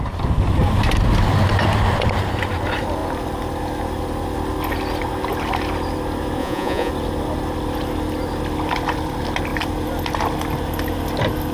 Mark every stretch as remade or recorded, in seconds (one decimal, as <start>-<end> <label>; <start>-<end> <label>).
0.0-6.4 recorded; 6.4-6.9 remade; 6.9-11.5 recorded

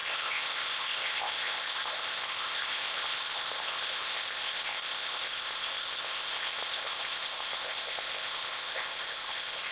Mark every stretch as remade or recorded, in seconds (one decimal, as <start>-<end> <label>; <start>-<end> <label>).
0.0-9.7 remade

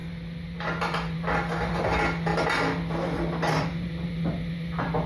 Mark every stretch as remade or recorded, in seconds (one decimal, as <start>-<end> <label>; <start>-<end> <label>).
0.0-5.1 recorded